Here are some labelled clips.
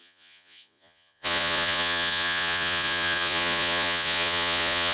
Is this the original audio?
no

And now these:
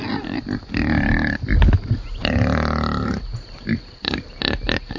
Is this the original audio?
yes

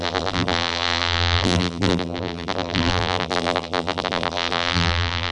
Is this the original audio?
no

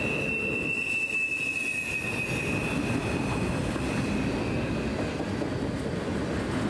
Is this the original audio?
yes